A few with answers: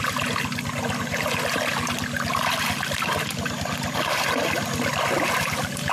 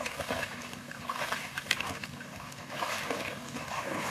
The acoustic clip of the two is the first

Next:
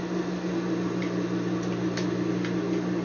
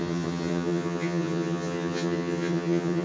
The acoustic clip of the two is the first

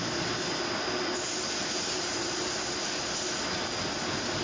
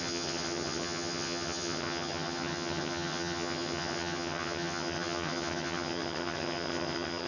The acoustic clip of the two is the first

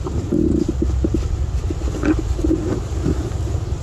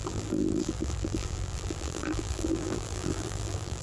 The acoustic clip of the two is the first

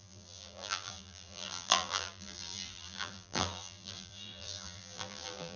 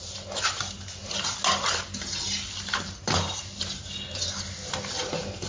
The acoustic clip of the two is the second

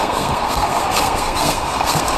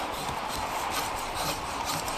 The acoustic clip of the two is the second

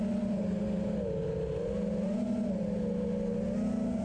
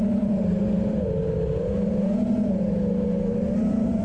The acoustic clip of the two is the first